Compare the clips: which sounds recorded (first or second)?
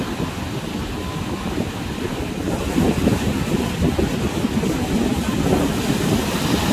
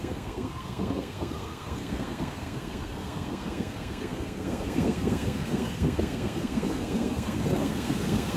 first